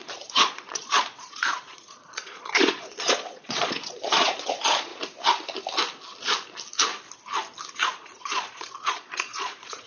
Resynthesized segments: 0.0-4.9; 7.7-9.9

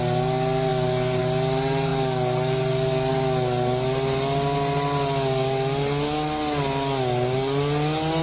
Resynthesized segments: none

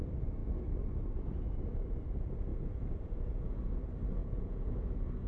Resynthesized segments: 2.5-3.7; 4.2-5.3